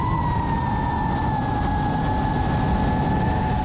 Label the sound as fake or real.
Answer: real